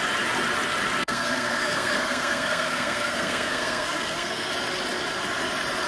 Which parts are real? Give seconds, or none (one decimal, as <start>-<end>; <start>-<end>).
0.0-1.0; 4.5-5.9

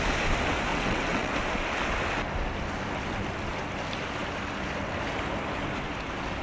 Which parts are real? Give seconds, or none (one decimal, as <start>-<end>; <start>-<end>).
0.0-0.7; 1.3-6.4

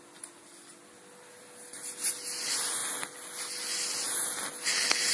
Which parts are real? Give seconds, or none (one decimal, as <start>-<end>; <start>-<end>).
0.0-5.1